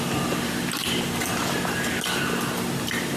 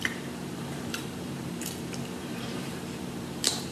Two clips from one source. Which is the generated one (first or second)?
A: second